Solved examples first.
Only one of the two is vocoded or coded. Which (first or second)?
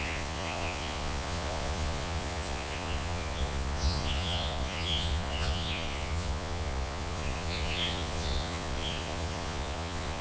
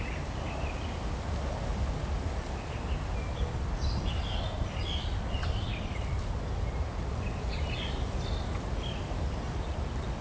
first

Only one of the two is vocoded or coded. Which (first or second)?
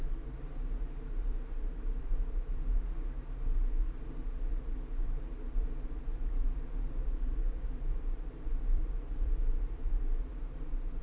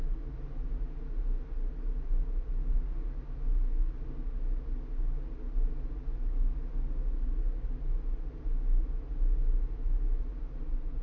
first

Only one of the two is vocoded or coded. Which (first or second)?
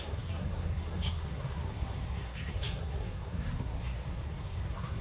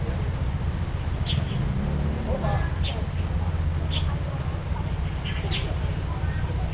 first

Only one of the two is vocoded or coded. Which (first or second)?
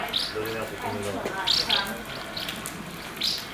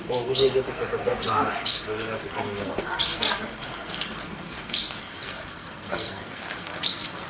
second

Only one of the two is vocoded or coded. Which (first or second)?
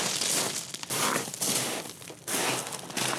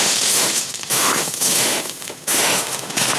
second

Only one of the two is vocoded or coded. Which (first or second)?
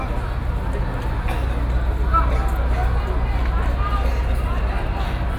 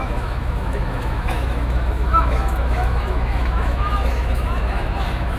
second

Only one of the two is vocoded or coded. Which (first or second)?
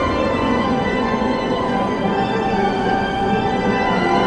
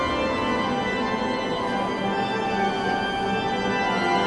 first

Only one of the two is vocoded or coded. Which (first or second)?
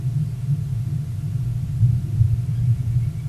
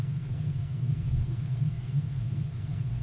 second